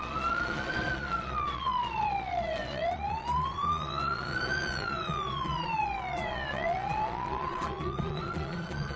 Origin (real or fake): fake